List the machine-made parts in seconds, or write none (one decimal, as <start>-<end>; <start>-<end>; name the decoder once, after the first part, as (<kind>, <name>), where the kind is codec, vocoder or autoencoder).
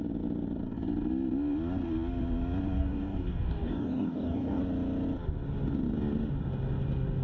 2.8-4.6 (codec, DAC)